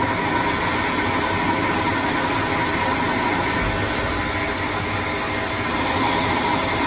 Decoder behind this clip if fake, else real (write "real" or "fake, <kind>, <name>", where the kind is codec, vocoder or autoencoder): real